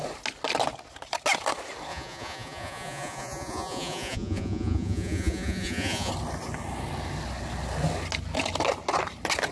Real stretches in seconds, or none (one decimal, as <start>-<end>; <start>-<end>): 0.0-1.9; 6.1-9.5